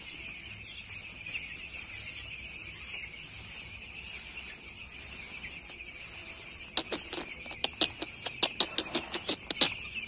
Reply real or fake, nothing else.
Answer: real